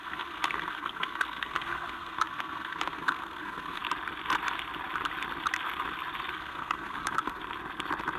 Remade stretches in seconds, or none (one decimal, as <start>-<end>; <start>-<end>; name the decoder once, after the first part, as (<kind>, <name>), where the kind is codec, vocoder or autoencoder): 0.0-3.8 (codec, SNAC); 6.3-7.4